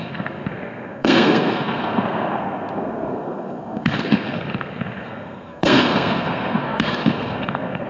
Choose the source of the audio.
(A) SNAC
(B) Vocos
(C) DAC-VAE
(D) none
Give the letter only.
A